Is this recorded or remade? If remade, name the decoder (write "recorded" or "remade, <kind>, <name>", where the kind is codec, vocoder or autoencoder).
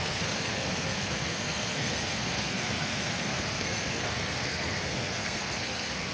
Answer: remade, codec, SNAC